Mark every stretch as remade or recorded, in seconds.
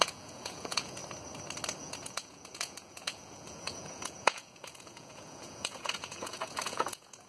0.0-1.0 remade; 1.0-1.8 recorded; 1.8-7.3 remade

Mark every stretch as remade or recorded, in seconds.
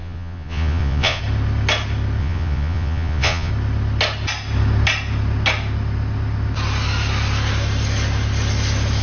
0.0-1.2 remade; 1.2-2.2 recorded; 2.2-3.5 remade; 3.5-9.0 recorded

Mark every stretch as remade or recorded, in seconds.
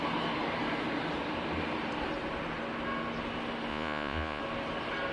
0.0-3.7 recorded; 3.7-4.4 remade; 4.4-5.1 recorded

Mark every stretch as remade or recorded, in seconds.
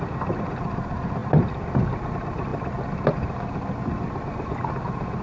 0.0-5.2 recorded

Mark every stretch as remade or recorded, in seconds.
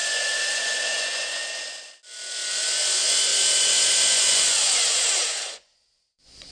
0.0-1.4 remade; 1.4-2.5 recorded; 2.5-3.3 remade; 3.3-4.1 recorded; 4.1-6.5 remade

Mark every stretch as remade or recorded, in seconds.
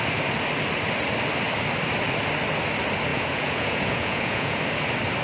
0.0-3.1 recorded; 3.1-4.6 remade; 4.6-5.2 recorded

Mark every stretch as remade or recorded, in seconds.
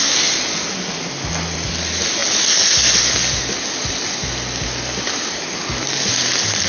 0.0-6.7 recorded